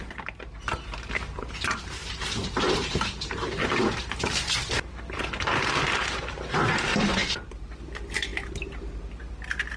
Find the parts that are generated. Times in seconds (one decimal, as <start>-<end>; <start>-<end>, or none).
2.0-4.6; 6.9-7.5